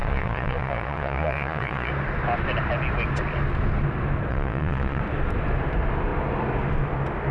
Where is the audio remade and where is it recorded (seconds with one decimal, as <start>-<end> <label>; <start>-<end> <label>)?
0.0-1.9 remade; 1.9-4.3 recorded; 4.3-5.0 remade; 5.0-7.3 recorded